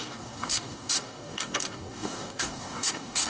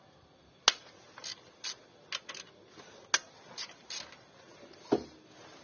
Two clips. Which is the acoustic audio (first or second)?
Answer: second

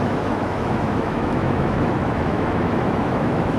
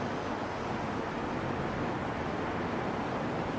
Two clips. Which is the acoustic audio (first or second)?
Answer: second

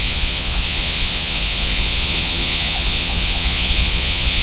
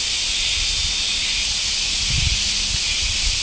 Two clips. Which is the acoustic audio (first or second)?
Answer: second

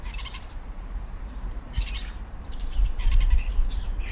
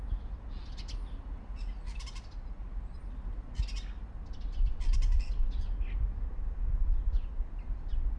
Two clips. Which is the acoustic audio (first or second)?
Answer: second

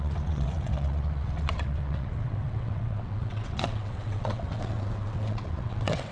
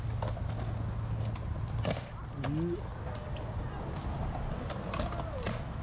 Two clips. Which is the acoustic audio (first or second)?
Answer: second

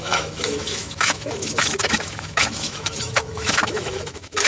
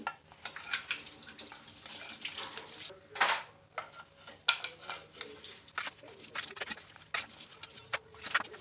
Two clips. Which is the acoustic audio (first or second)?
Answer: second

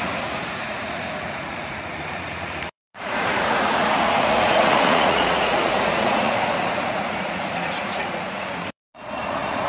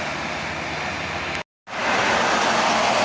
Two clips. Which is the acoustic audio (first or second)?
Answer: second